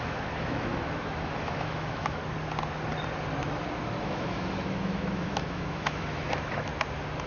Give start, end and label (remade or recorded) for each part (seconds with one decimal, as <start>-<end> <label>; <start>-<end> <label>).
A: 0.0-2.2 remade; 2.2-4.0 recorded; 4.0-6.7 remade; 6.7-7.3 recorded